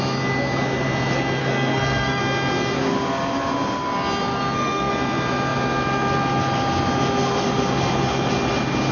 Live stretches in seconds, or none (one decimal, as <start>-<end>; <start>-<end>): 0.0-1.4; 2.2-4.3; 4.9-8.9